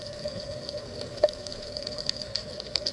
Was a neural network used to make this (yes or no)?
yes